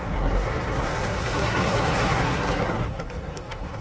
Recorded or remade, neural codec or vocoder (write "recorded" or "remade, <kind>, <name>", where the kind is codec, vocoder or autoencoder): remade, codec, SNAC